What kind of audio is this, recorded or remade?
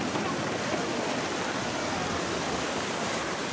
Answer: recorded